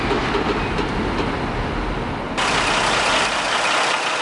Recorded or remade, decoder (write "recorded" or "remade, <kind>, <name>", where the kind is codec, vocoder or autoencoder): recorded